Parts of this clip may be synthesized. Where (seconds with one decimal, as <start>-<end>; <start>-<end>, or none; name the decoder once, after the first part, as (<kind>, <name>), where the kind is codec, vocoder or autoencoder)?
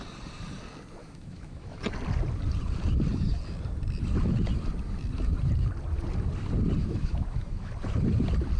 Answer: 1.0-1.8 (autoencoder, DAC-VAE); 6.8-7.7